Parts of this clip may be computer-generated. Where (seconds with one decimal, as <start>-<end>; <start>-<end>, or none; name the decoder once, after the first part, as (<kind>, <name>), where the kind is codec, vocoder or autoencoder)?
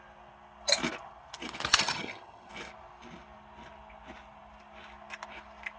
1.7-2.5 (vocoder, HiFi-GAN)